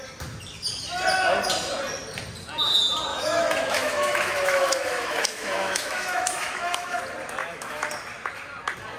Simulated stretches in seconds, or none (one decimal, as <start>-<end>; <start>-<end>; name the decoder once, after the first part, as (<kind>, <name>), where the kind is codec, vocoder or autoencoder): 3.1-7.0 (autoencoder, DAC-VAE); 7.4-7.9